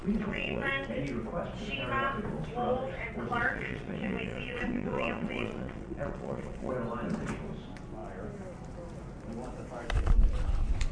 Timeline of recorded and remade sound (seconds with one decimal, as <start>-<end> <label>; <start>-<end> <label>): 0.0-0.7 remade; 0.7-3.3 recorded; 3.3-6.7 remade; 6.7-10.9 recorded